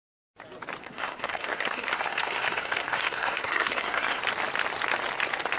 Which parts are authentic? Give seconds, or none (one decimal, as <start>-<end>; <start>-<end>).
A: 0.0-0.8; 4.2-5.6